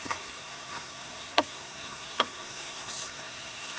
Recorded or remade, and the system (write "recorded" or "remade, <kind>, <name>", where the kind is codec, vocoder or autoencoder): remade, codec, SNAC